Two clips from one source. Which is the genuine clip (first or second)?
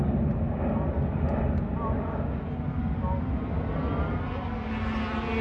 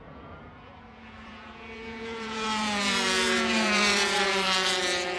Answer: first